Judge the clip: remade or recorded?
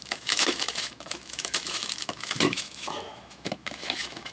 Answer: remade